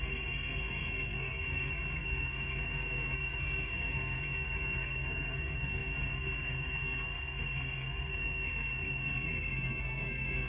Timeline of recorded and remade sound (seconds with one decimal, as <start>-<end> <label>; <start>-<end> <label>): 0.0-10.5 remade